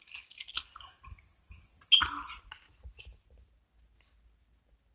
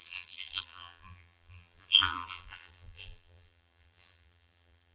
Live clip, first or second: first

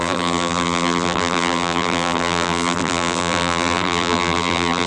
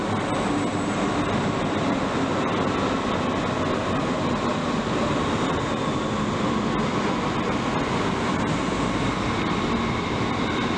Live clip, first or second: second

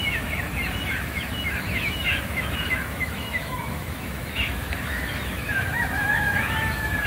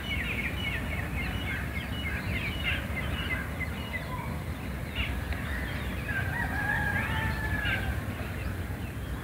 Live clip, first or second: second